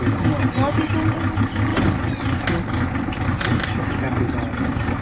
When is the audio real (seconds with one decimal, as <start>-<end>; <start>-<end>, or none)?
0.0-5.0